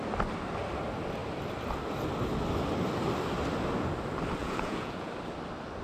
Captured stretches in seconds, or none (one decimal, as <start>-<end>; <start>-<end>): 0.0-4.4; 5.1-5.8